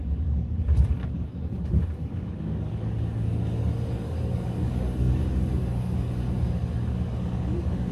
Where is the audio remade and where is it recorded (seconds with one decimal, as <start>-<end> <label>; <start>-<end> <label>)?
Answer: 0.0-7.9 remade